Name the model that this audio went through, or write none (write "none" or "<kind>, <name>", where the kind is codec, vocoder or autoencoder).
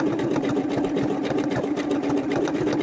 none